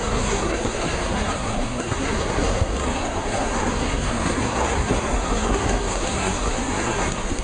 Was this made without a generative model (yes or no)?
no